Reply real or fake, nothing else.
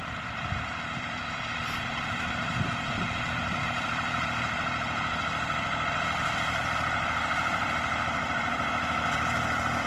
fake